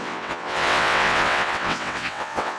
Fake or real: fake